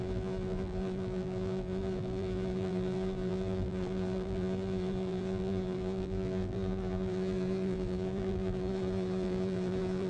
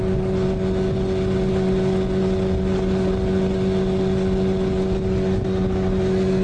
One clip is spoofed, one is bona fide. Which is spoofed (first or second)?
first